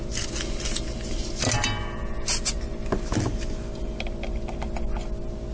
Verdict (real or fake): real